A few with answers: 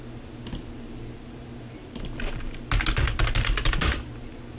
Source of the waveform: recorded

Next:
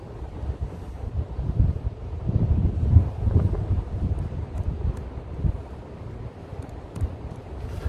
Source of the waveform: recorded